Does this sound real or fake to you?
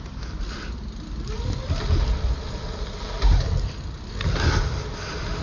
real